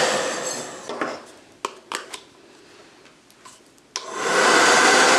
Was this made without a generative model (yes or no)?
yes